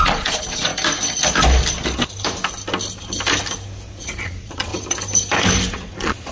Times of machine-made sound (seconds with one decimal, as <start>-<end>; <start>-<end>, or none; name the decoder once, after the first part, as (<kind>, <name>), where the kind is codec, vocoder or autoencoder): 0.0-0.7 (vocoder, Vocos); 4.2-4.7; 5.7-6.3